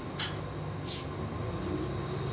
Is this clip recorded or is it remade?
recorded